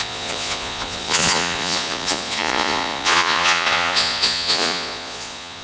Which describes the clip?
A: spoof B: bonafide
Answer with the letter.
A